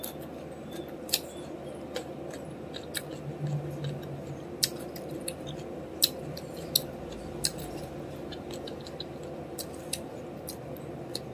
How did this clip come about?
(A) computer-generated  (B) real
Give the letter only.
B